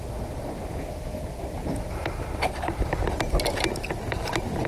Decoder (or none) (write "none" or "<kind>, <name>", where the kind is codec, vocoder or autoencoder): none